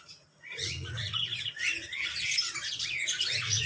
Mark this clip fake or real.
fake